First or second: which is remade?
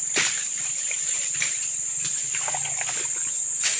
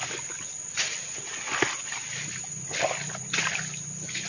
first